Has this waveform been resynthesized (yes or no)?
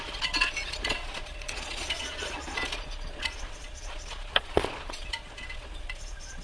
yes